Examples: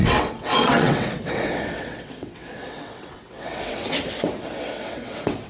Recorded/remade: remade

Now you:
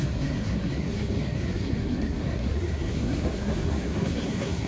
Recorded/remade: remade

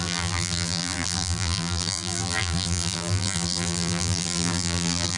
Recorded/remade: remade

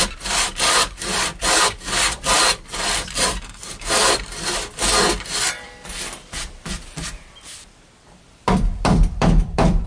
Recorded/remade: remade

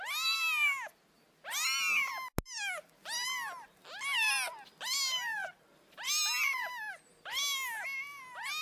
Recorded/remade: recorded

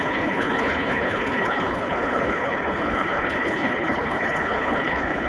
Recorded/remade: remade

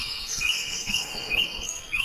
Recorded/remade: remade